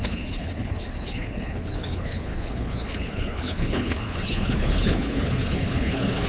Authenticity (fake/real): fake